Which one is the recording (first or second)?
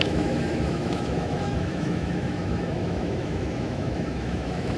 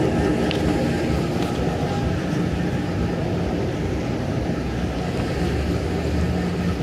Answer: second